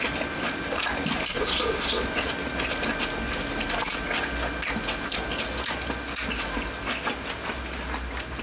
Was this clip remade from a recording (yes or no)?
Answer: no